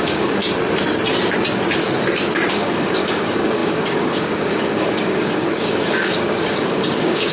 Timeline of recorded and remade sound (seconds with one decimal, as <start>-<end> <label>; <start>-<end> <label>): 0.0-0.4 remade; 0.4-2.5 recorded; 2.5-7.3 remade